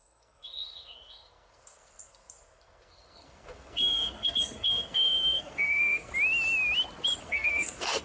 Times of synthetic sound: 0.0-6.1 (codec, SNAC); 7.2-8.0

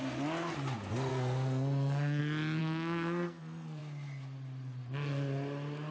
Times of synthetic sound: 1.1-2.2 (codec, SNAC); 2.6-3.8